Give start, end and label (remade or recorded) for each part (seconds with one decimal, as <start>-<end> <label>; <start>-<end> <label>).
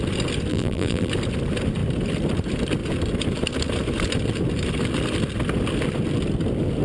0.0-0.5 recorded; 0.5-1.1 remade; 1.1-6.8 recorded